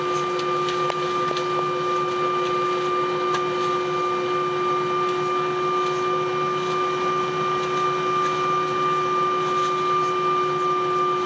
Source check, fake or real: real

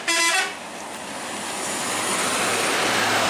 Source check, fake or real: real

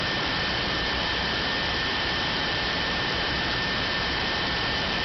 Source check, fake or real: fake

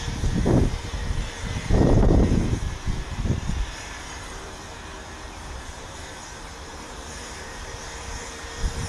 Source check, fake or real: fake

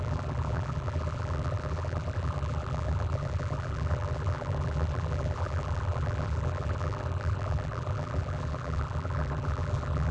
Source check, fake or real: fake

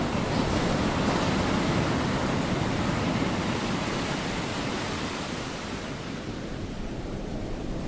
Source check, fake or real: real